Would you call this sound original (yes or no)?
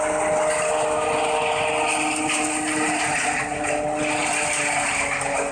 yes